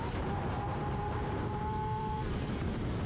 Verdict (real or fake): fake